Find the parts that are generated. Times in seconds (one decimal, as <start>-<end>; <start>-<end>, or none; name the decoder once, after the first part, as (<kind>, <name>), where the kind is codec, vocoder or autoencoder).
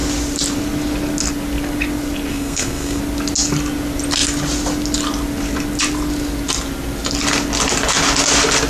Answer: 2.3-3.0 (codec, SNAC)